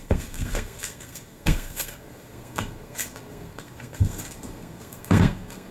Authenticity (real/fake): fake